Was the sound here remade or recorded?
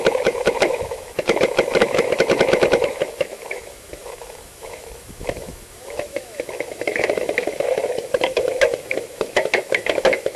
remade